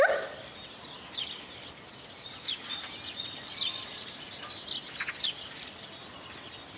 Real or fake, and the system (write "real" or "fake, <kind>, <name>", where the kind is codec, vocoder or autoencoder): fake, vocoder, BigVGAN v2